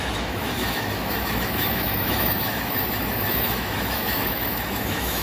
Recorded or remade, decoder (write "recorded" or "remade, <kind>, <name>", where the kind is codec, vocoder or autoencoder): remade, autoencoder, DAC-VAE